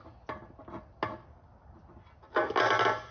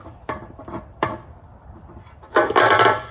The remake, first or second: second